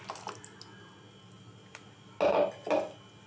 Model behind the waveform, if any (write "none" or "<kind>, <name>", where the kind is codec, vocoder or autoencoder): none